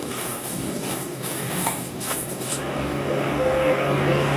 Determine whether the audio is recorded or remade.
remade